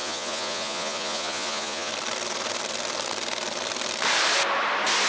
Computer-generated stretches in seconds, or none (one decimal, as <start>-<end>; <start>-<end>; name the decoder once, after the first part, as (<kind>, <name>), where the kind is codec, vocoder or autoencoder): 0.0-1.9 (vocoder, Vocos)